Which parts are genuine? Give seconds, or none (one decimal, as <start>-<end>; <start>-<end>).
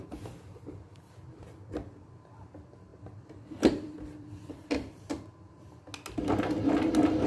0.0-2.9; 5.1-7.3